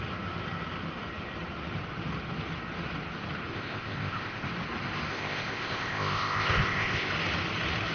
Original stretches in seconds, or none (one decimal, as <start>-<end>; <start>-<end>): 0.0-3.5; 4.5-5.1; 7.1-7.9